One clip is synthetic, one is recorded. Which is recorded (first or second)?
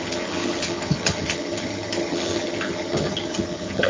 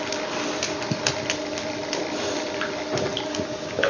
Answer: second